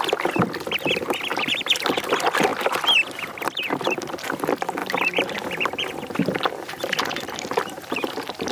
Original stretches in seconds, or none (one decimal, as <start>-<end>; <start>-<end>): 0.0-1.3; 2.1-4.8